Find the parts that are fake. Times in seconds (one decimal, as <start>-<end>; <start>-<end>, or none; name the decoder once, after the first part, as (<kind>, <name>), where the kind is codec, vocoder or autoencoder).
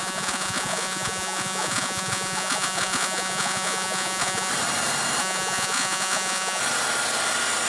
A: 0.0-4.5 (vocoder, Vocos); 5.2-6.6